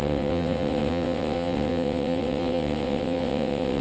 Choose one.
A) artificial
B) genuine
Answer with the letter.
A